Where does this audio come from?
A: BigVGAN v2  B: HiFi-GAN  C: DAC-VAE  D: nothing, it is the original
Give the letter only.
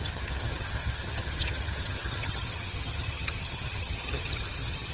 B